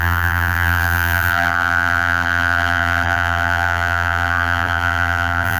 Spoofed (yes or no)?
yes